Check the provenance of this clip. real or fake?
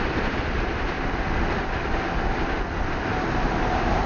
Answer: real